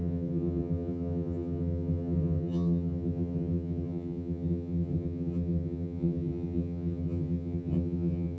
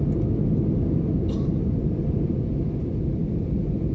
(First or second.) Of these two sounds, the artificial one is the first